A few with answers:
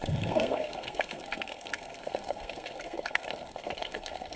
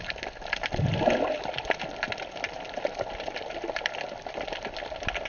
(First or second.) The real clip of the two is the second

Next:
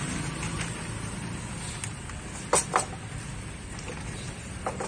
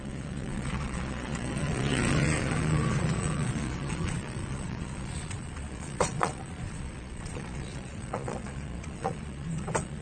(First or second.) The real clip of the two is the first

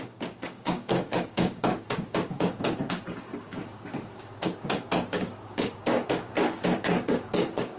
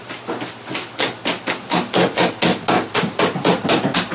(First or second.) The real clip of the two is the second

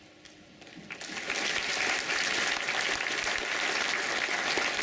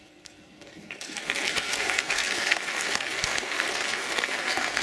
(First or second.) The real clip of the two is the first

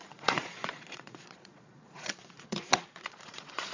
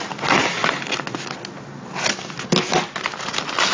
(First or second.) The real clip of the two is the second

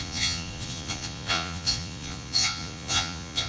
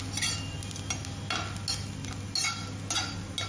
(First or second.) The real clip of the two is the second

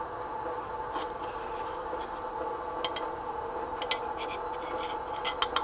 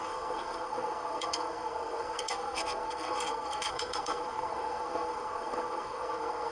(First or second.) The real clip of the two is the first